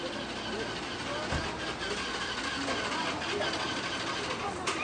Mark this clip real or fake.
real